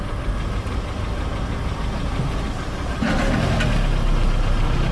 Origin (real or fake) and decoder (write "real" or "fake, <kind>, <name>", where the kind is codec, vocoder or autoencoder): real